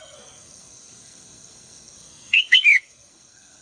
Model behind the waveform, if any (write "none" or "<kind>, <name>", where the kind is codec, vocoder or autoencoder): codec, SNAC